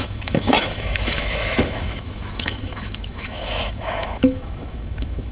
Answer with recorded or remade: remade